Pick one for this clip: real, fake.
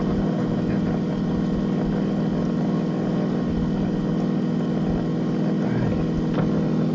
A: real